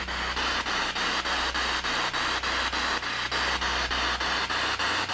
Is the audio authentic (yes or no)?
yes